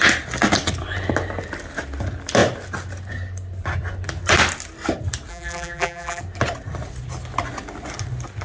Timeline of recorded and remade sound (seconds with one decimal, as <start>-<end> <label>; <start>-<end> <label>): 0.0-5.3 recorded; 5.3-6.2 remade; 6.2-8.4 recorded